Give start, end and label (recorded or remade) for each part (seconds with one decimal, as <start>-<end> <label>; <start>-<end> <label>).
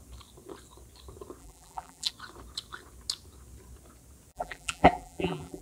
0.0-1.4 recorded; 1.4-2.1 remade; 2.1-4.3 recorded; 4.3-5.6 remade